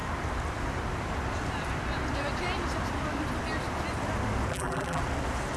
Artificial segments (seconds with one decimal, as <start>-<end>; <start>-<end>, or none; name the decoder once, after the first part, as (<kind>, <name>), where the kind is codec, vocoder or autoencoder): 4.5-5.0 (vocoder, BigVGAN v2)